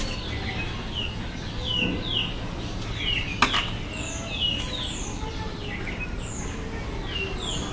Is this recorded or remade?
recorded